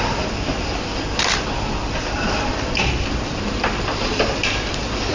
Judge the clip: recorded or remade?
recorded